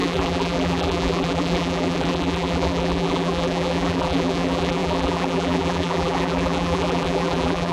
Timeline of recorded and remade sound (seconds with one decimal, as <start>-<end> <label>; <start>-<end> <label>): 0.0-7.7 remade